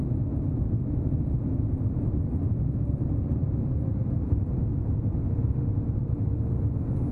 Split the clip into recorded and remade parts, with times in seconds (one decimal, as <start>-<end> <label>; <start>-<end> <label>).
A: 0.0-7.1 recorded